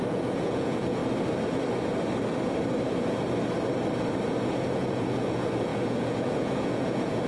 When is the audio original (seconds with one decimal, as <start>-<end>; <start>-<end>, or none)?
1.0-4.4